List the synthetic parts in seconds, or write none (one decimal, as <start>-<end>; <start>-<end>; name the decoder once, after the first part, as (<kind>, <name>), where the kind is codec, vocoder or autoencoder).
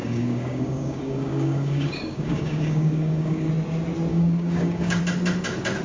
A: 0.0-3.5 (codec, DAC); 4.1-5.0